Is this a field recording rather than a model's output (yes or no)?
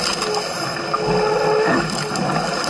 yes